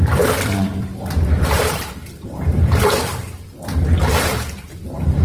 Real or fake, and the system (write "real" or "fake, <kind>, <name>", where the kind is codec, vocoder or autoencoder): fake, vocoder, BigVGAN v2